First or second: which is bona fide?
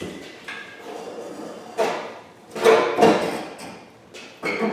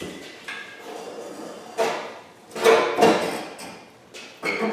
second